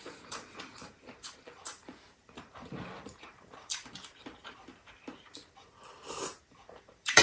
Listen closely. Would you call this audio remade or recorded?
remade